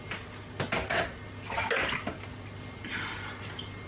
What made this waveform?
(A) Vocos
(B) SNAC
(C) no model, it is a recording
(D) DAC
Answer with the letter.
C